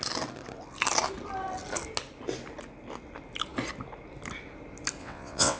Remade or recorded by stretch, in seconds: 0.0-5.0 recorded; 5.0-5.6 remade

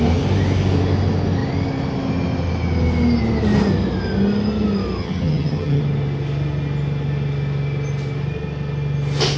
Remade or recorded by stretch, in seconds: 0.0-5.0 recorded; 5.0-5.8 remade; 5.8-9.4 recorded

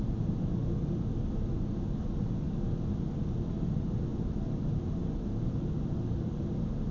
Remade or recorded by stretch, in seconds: 0.0-4.1 recorded; 4.1-6.9 remade

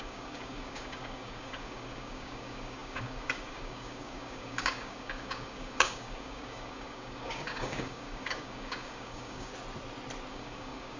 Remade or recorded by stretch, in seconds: 0.0-9.5 remade; 9.5-10.3 recorded; 10.3-11.0 remade

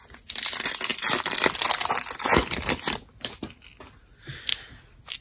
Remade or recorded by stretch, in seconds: 0.0-5.2 recorded

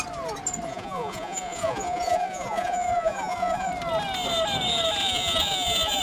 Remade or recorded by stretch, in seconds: 0.0-0.7 recorded; 0.7-3.7 remade; 3.7-5.0 recorded; 5.0-6.0 remade

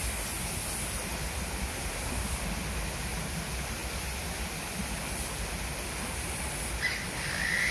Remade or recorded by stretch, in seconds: 0.0-7.7 recorded